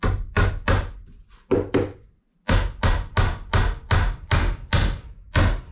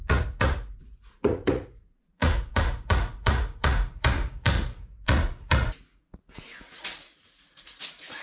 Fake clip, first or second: second